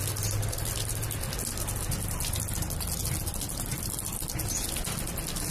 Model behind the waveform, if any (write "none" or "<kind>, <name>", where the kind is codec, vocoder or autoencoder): none